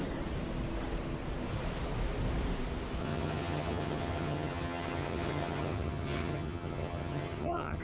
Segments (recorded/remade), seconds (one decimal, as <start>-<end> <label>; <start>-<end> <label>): 0.0-3.0 recorded; 3.0-7.8 remade